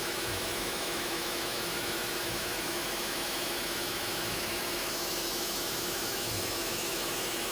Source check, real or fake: fake